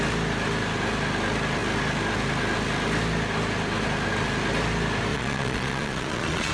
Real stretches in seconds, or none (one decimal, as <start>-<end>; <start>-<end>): 0.0-5.1